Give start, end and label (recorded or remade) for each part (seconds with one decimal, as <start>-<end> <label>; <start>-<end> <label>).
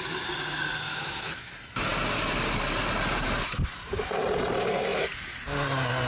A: 0.0-0.9 recorded; 0.9-1.5 remade; 1.5-6.1 recorded